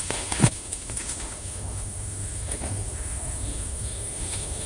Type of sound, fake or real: fake